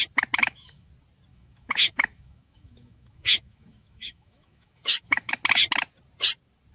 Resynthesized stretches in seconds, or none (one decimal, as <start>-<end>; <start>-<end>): 0.4-0.9; 1.3-5.3